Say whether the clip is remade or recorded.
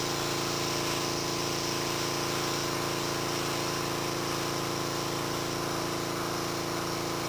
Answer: recorded